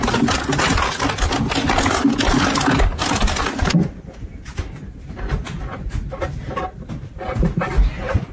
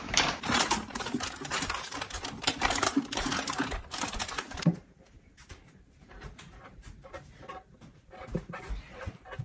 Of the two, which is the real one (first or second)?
first